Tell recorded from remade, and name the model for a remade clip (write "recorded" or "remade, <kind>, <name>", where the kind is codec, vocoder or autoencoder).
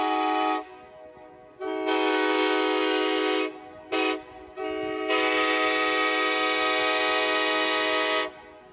recorded